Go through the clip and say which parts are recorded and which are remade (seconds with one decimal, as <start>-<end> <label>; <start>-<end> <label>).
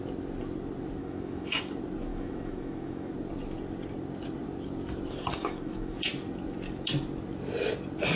0.0-1.0 recorded; 1.0-1.6 remade; 1.6-2.1 recorded; 2.1-3.1 remade; 3.1-5.4 recorded; 5.4-6.1 remade; 6.1-8.2 recorded